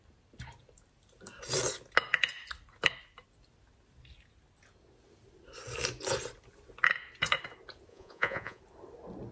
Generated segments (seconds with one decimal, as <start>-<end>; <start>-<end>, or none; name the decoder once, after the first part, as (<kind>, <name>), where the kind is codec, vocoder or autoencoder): 7.9-8.6 (vocoder, Vocos)